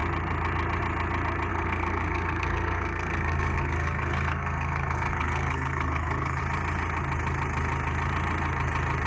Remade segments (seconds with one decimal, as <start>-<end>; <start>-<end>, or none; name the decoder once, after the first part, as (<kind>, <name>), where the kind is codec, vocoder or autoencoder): 1.5-6.4 (codec, SNAC)